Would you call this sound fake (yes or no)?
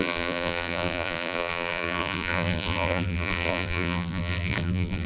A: yes